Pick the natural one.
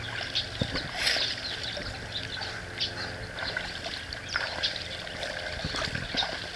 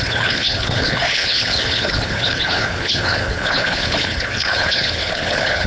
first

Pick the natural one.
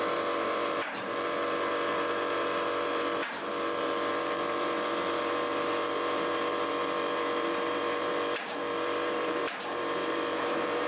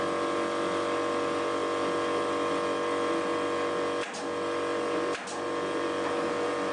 second